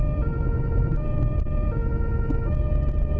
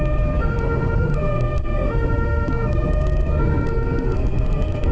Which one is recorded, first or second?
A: first